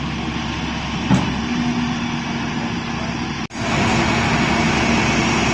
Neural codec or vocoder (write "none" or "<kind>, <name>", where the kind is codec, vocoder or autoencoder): none